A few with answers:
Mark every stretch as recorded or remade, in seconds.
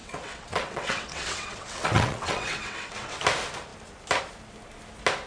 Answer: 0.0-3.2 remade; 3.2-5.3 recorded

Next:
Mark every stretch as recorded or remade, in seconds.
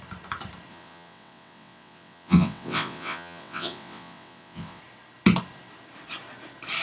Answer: 0.0-0.7 recorded; 0.7-4.8 remade; 4.8-6.8 recorded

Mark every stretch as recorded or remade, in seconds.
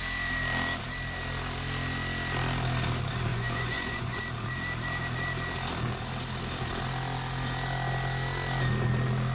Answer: 0.0-3.3 recorded; 3.3-4.2 remade; 4.2-9.3 recorded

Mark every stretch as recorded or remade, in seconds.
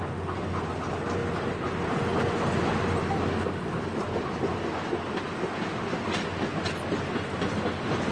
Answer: 0.0-8.1 recorded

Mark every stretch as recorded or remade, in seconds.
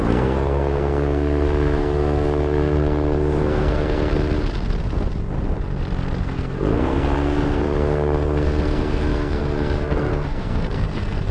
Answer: 0.0-4.1 remade; 4.1-6.2 recorded; 6.2-11.3 remade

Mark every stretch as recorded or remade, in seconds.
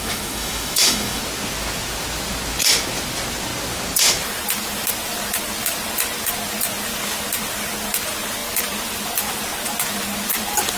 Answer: 0.0-1.2 remade; 1.2-10.8 recorded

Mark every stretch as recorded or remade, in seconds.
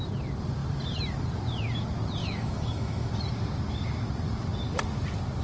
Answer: 0.0-2.2 recorded; 2.2-3.1 remade; 3.1-5.4 recorded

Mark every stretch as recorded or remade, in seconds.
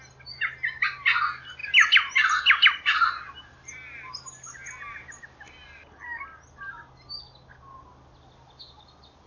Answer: 0.0-9.3 recorded